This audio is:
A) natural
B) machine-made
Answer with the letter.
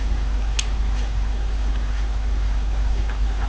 B